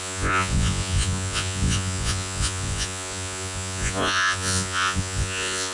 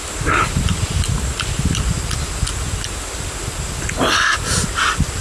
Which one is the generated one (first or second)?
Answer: first